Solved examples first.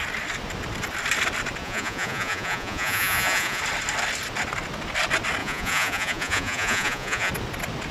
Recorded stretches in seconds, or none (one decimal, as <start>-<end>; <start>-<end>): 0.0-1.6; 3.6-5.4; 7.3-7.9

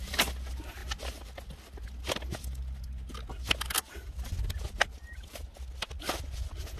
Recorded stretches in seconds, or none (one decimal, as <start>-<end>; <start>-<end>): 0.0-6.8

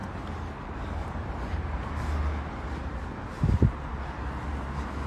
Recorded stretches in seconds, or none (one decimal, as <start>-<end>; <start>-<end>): 1.8-5.1

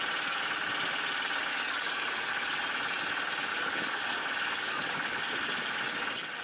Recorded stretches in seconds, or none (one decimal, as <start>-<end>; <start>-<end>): 0.0-1.5; 2.3-3.5; 5.2-6.4

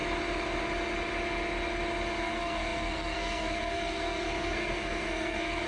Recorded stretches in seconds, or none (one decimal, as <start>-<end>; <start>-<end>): 0.0-2.2

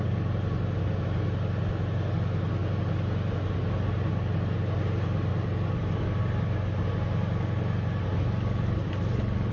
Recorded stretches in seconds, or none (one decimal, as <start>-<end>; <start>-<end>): 0.0-9.5

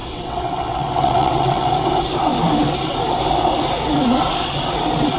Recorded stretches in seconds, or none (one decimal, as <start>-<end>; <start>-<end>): 1.7-5.2